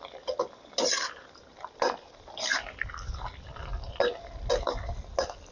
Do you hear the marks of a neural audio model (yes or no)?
no